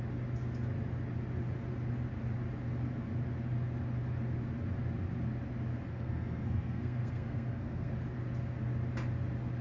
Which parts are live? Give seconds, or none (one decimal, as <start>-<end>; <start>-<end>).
0.0-5.9; 7.9-9.6